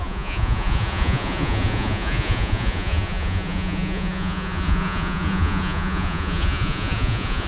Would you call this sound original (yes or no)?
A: no